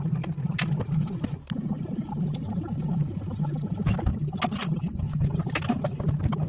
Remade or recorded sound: recorded